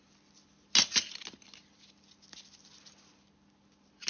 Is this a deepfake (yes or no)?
no